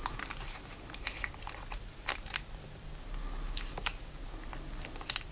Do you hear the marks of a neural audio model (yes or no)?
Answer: no